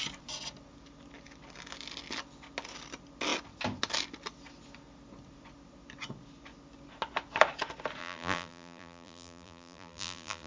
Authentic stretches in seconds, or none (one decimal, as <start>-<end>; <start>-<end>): 0.0-8.0